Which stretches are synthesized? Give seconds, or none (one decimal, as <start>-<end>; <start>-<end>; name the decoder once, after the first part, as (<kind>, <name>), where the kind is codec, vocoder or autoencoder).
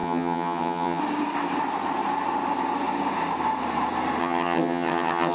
0.0-1.0 (vocoder, HiFi-GAN); 4.2-5.3